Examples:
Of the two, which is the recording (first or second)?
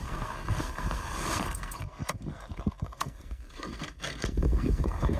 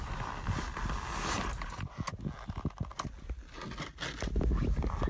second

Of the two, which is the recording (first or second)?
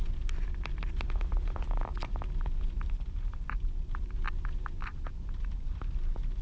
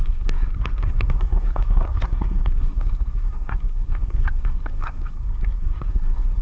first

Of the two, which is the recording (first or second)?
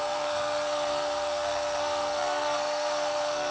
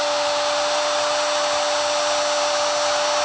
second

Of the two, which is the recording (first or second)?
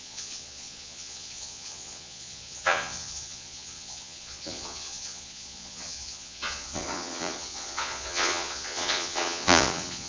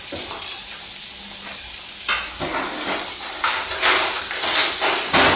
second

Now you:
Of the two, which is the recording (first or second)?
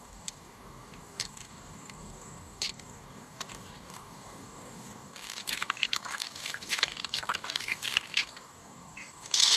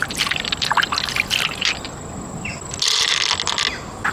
second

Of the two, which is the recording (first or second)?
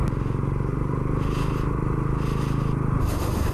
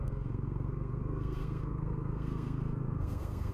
first